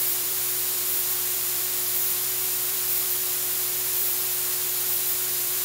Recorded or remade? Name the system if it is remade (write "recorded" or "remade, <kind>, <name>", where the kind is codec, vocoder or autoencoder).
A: remade, vocoder, BigVGAN v2